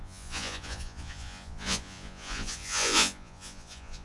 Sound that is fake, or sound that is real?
fake